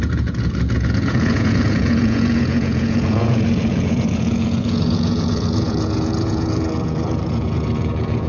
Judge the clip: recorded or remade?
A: remade